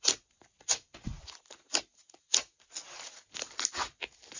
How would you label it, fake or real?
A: real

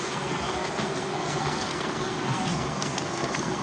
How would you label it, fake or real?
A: fake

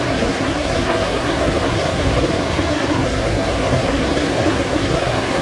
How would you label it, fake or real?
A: fake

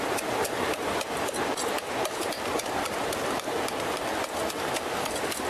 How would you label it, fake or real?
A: real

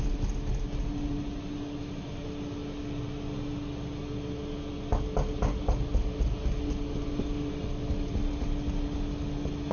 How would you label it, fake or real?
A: real